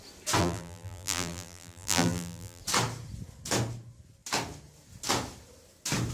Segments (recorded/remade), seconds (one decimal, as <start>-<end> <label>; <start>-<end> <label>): 0.0-0.4 recorded; 0.4-2.6 remade; 2.6-6.1 recorded